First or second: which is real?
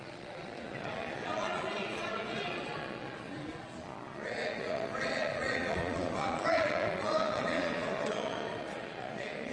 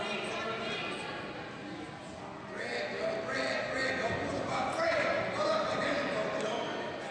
second